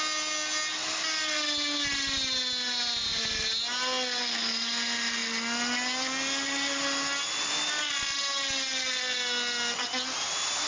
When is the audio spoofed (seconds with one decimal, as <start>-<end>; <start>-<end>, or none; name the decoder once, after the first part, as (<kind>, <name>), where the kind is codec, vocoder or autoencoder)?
none